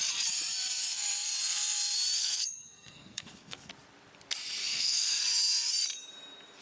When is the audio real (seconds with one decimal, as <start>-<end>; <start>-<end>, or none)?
0.0-2.2; 3.7-4.6; 5.2-6.6